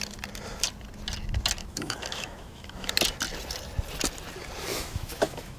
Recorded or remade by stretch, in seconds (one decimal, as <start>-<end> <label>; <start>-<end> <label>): 0.0-1.6 recorded; 1.6-2.9 remade; 2.9-4.7 recorded; 4.7-5.6 remade